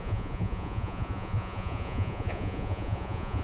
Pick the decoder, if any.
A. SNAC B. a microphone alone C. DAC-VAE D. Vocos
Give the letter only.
D